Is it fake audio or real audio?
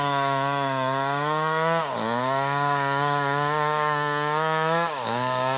fake